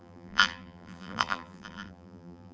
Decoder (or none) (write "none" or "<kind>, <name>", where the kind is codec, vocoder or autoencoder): vocoder, BigVGAN v2